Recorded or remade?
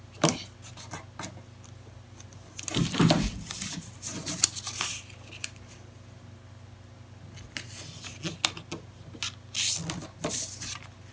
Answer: recorded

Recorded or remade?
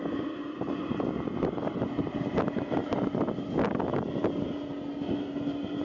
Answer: recorded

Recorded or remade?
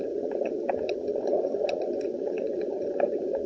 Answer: remade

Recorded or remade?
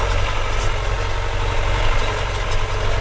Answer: recorded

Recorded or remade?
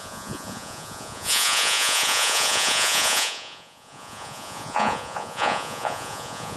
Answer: remade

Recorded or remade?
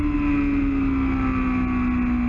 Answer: recorded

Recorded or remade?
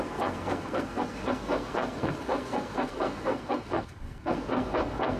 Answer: remade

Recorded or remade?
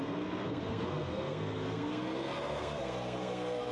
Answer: remade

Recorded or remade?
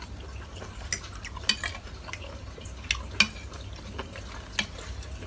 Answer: recorded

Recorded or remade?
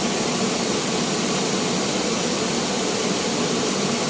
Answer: recorded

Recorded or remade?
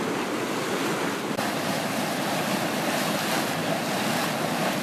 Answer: recorded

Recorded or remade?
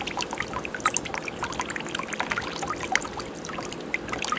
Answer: recorded